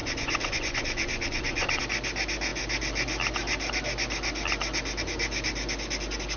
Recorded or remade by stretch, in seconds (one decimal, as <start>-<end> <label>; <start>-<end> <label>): 0.0-1.8 remade; 1.8-6.4 recorded